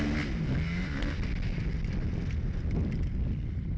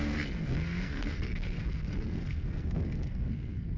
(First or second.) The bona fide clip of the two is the first